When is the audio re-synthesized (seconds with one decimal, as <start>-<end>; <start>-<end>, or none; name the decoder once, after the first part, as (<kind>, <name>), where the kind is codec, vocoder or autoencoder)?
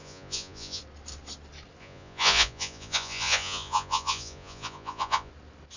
0.0-0.8 (vocoder, Vocos); 1.8-5.3